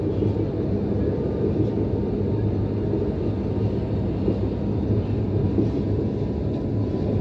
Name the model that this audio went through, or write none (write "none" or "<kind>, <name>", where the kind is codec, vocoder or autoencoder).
none